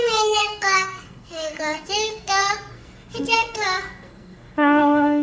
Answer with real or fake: fake